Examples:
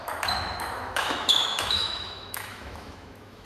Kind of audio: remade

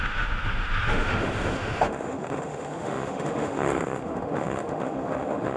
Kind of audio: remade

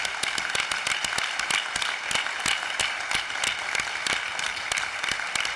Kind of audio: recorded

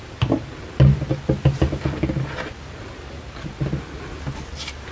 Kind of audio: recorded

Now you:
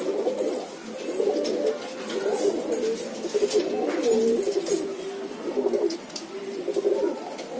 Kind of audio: recorded